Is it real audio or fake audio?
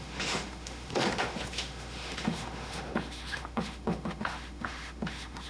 fake